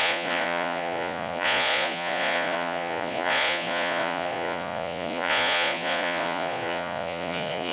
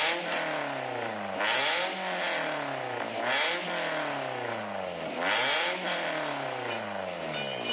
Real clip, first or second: second